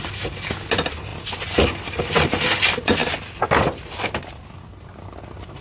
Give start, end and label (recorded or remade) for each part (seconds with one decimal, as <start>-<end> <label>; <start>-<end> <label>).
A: 0.0-5.6 recorded

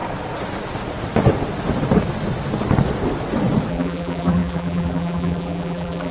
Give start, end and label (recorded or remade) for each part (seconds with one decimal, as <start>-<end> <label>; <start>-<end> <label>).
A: 0.0-3.7 recorded; 3.7-6.1 remade

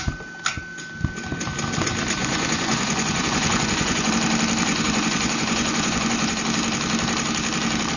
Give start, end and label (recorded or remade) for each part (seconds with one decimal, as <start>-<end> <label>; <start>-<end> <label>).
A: 0.0-2.2 recorded; 2.2-4.1 remade; 4.1-4.7 recorded; 4.7-6.4 remade; 6.4-8.0 recorded

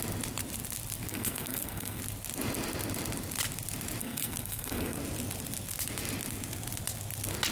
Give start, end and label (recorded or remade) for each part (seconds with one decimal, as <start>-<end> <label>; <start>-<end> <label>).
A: 0.0-1.1 recorded; 1.1-2.0 remade; 2.0-4.0 recorded; 4.0-5.0 remade; 5.0-7.5 recorded

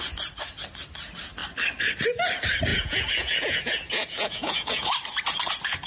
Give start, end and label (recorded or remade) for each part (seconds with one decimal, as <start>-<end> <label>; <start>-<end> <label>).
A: 0.0-2.7 recorded; 2.7-4.9 remade; 4.9-5.9 recorded

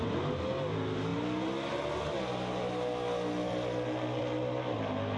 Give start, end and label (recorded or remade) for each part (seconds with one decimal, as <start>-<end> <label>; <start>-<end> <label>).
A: 0.0-5.2 recorded

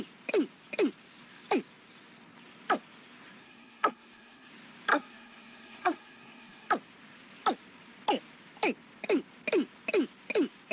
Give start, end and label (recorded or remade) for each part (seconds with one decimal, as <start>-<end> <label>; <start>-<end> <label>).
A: 0.0-3.4 recorded; 3.4-4.5 remade; 4.5-4.9 recorded; 4.9-6.7 remade; 6.7-10.7 recorded

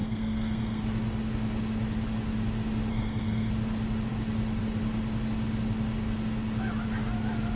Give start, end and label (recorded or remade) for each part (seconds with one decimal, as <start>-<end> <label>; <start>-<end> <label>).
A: 0.0-0.8 remade; 0.8-2.9 recorded; 2.9-3.5 remade; 3.5-7.6 recorded